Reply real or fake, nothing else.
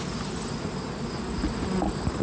real